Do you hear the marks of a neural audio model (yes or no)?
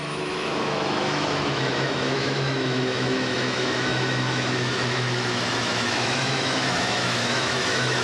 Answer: yes